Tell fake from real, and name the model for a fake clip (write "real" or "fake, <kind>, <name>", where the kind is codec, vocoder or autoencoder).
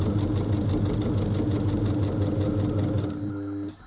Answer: real